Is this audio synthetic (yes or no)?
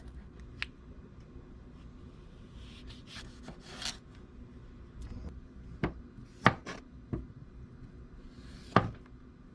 no